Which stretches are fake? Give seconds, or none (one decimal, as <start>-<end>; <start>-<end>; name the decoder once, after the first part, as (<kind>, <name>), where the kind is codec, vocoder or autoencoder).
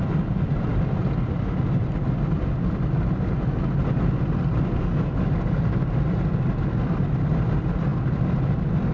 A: none